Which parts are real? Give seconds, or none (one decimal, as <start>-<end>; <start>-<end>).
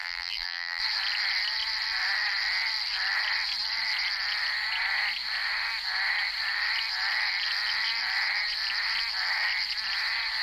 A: 0.8-10.4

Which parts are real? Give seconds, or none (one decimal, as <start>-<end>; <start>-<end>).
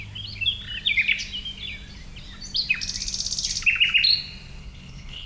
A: 0.0-4.6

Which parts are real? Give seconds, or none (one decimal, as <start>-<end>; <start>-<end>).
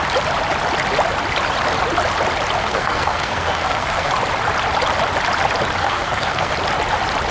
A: 0.0-2.6; 4.1-5.8; 6.5-7.3